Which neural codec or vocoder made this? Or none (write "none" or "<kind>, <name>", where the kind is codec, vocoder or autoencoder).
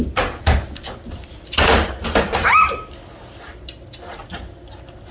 none